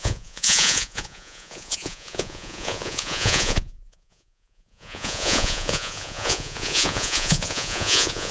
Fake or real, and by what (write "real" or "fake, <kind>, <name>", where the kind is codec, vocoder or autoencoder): fake, vocoder, Vocos